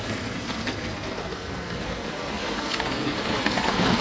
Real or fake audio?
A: fake